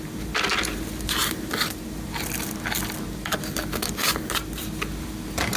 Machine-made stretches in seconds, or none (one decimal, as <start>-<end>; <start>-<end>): none